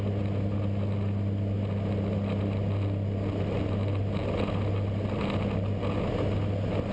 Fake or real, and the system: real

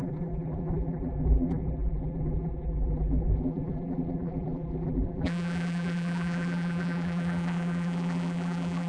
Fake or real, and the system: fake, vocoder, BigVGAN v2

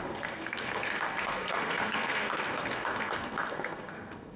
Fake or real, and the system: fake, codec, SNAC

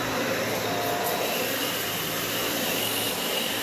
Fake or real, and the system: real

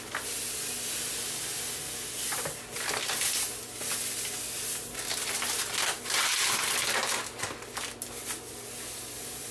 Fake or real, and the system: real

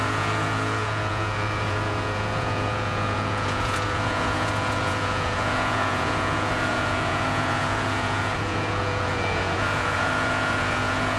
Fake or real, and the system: fake, vocoder, Vocos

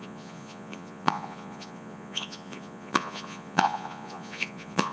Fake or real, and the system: fake, vocoder, Vocos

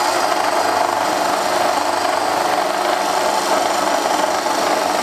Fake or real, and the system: real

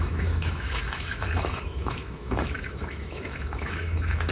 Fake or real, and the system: fake, autoencoder, DAC-VAE